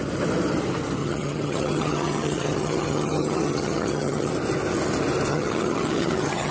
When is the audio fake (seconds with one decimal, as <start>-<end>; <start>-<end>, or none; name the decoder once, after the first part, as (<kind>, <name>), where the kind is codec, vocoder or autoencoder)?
1.0-4.3 (vocoder, HiFi-GAN); 5.3-6.5